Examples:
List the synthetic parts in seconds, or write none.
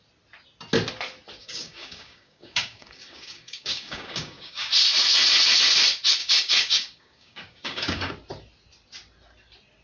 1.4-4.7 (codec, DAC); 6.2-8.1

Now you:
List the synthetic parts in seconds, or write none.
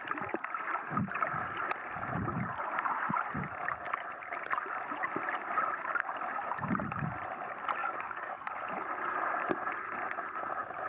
7.8-8.5 (codec, DAC)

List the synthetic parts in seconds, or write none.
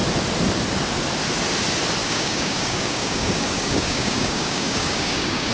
2.0-5.5 (codec, DAC)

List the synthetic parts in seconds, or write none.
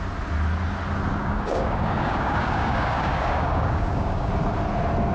1.2-4.3 (codec, DAC)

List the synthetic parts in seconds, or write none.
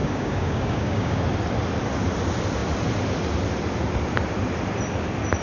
0.0-1.2 (codec, DAC)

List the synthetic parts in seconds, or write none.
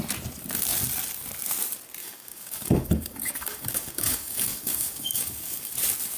2.0-5.7 (codec, DAC)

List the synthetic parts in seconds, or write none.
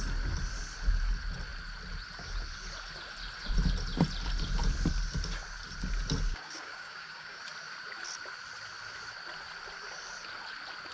6.3-7.4 (codec, DAC)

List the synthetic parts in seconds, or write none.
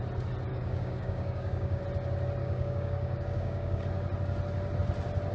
0.5-1.8 (codec, DAC); 2.4-3.8